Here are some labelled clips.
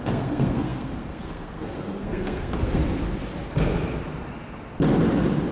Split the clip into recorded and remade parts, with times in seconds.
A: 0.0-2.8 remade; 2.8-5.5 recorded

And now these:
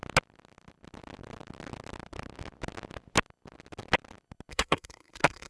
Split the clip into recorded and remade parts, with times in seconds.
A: 0.0-4.5 recorded; 4.5-5.5 remade

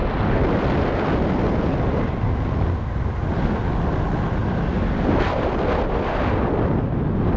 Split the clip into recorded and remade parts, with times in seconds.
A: 0.0-7.4 recorded

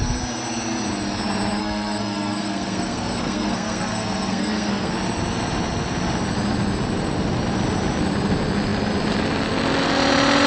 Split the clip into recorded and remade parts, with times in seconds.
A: 0.0-1.6 recorded; 1.6-4.9 remade; 4.9-10.5 recorded

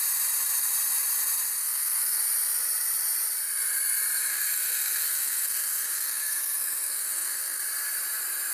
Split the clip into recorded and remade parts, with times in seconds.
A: 0.0-1.6 recorded; 1.6-2.2 remade; 2.2-4.3 recorded; 4.3-7.6 remade; 7.6-8.5 recorded